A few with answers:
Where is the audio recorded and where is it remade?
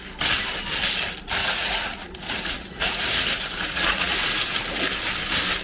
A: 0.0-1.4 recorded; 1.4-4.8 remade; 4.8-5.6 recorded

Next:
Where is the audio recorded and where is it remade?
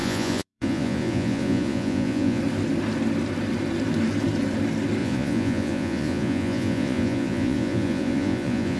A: 0.0-2.4 remade; 2.4-5.0 recorded; 5.0-8.8 remade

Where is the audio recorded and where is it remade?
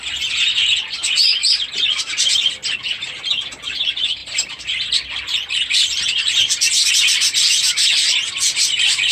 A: 0.0-9.1 recorded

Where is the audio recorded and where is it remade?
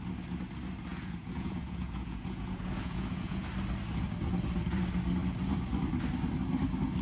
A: 0.0-0.9 recorded; 0.9-3.5 remade; 3.5-7.0 recorded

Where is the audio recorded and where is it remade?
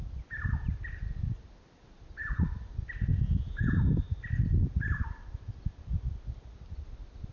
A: 0.0-3.1 recorded; 3.1-3.8 remade; 3.8-7.3 recorded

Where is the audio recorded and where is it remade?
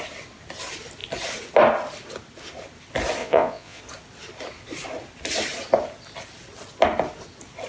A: 0.0-3.2 recorded; 3.2-3.8 remade; 3.8-7.7 recorded